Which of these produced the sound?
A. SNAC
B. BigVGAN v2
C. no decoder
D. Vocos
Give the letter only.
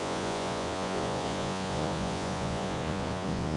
D